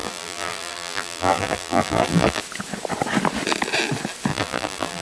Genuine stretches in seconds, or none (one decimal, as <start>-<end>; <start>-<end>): 2.4-4.3

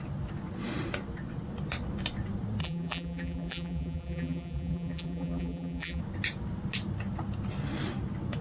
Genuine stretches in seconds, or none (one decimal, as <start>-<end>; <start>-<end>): 0.0-2.6; 6.0-8.4

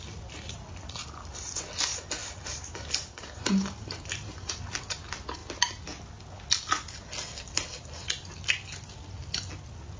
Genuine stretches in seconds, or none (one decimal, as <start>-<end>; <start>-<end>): 0.0-2.2; 4.5-10.0